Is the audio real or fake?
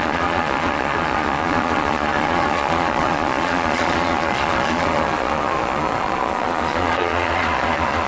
fake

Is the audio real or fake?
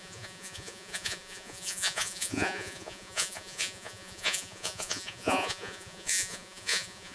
fake